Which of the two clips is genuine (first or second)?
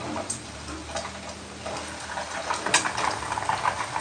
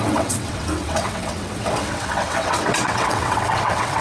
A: first